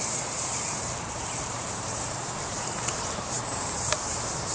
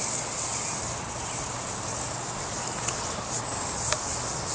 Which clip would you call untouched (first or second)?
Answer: second